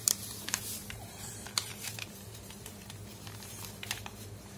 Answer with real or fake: fake